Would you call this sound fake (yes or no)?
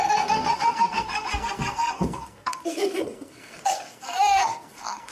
yes